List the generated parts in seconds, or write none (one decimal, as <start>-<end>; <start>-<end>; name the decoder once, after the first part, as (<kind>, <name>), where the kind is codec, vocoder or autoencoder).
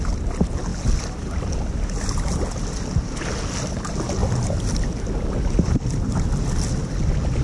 none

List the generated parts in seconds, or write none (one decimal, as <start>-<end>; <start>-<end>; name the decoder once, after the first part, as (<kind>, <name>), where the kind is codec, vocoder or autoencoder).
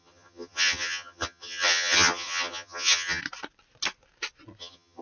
0.0-3.2 (vocoder, HiFi-GAN); 4.6-5.0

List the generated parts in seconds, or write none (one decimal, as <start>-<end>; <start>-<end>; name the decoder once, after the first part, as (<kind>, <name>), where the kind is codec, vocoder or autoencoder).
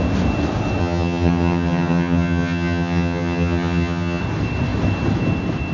0.8-4.2 (vocoder, HiFi-GAN)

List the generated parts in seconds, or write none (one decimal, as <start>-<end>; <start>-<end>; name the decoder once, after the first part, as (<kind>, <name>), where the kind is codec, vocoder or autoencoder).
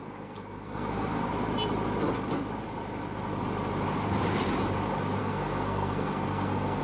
0.0-1.3 (codec, SNAC); 5.2-6.8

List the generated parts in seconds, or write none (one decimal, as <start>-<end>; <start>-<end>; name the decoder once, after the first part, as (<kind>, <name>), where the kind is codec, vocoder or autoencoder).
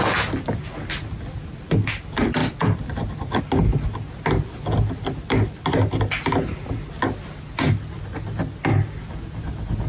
2.4-3.4 (vocoder, BigVGAN v2)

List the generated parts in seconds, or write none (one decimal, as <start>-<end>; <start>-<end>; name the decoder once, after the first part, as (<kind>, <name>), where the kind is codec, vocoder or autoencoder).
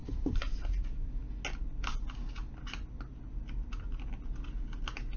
0.0-0.6 (vocoder, BigVGAN v2)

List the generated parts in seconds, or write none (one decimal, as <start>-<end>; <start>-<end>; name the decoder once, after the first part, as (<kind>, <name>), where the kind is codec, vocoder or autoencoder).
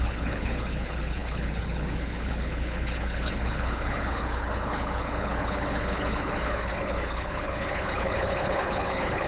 0.0-9.3 (codec, HILCodec)